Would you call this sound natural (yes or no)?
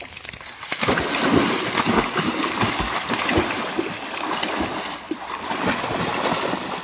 yes